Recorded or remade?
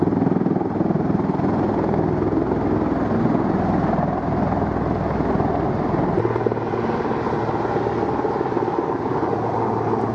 recorded